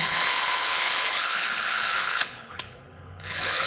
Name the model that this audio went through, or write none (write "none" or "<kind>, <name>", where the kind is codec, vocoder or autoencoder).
codec, HILCodec